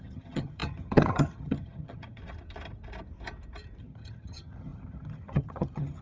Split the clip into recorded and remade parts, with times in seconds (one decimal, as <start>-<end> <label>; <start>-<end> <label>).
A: 0.0-2.2 remade; 2.2-3.8 recorded; 3.8-6.0 remade